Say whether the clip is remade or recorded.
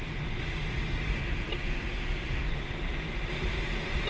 recorded